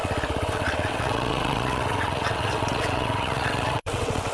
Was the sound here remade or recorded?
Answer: remade